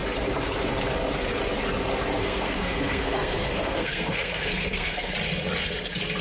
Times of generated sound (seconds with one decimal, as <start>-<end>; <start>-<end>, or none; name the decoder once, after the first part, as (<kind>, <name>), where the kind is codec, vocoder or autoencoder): 2.2-5.1 (codec, SNAC)